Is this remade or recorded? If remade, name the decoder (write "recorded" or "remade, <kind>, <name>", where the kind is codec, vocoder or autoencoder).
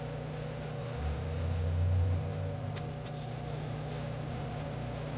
recorded